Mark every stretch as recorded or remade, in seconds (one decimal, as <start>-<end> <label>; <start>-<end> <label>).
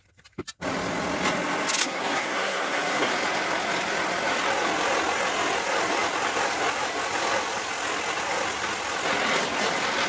0.0-1.8 recorded; 1.8-3.1 remade; 3.1-10.1 recorded